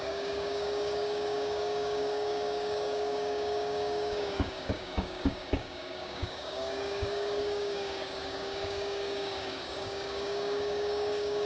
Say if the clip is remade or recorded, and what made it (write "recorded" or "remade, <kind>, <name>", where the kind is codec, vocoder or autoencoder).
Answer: remade, codec, DAC